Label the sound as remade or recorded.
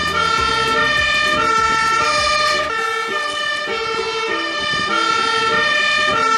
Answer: recorded